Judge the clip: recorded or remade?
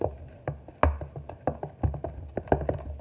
recorded